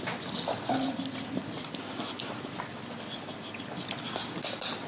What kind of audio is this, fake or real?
real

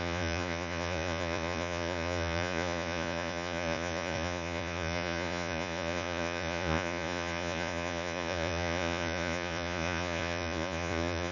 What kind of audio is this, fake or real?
fake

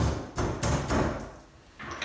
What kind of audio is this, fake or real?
real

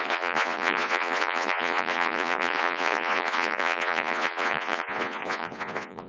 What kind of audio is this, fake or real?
fake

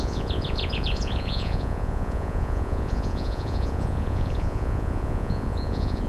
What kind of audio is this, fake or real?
fake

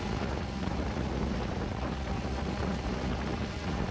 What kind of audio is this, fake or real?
fake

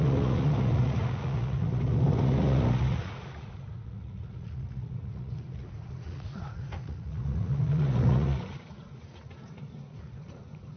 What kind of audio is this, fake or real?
fake